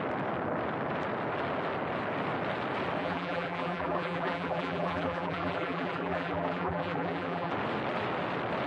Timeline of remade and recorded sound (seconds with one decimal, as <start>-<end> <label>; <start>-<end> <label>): 0.0-3.0 recorded; 3.0-7.5 remade; 7.5-8.7 recorded